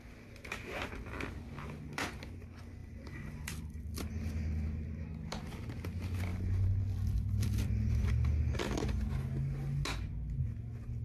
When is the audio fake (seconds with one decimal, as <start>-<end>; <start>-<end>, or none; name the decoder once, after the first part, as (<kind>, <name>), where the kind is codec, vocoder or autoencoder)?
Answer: 2.8-3.9 (vocoder, BigVGAN v2); 6.3-8.1